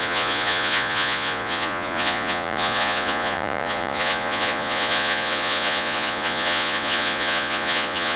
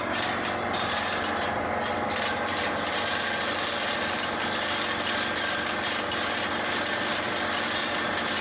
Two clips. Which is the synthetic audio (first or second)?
first